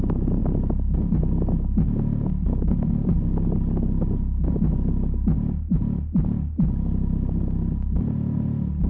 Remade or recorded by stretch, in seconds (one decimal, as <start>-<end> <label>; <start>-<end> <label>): 0.0-8.9 recorded